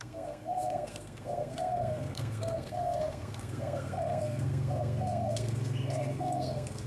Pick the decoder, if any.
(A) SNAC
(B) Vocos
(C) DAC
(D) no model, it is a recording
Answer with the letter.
A